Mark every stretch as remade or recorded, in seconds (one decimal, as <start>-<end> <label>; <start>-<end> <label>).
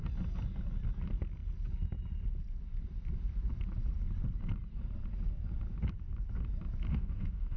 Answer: 0.0-6.9 recorded; 6.9-7.6 remade